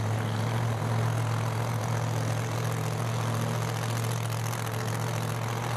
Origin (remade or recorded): recorded